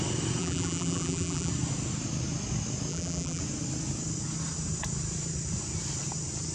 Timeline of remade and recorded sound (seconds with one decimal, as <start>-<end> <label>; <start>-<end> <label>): 0.0-0.4 recorded; 0.4-1.5 remade; 1.5-2.9 recorded; 2.9-3.4 remade; 3.4-6.5 recorded